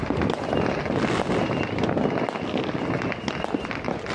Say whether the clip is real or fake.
real